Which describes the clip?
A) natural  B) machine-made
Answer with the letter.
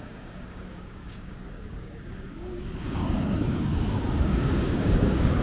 B